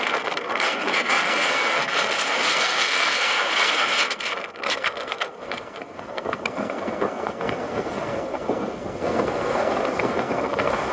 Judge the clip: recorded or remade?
remade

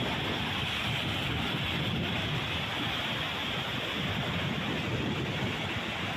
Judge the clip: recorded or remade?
recorded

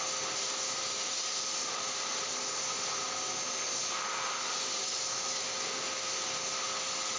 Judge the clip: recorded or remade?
recorded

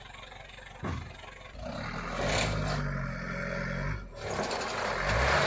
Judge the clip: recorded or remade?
recorded